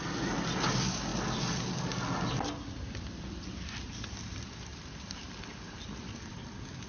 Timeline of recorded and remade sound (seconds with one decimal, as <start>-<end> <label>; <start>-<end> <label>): 0.0-1.1 remade; 1.1-4.1 recorded; 4.1-6.9 remade